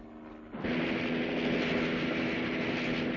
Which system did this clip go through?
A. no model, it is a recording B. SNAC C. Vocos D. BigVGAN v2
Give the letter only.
A